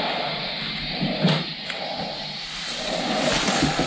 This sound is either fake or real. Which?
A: real